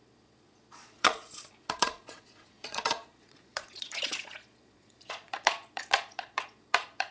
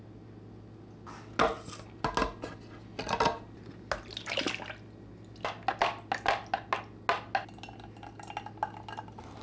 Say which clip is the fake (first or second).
first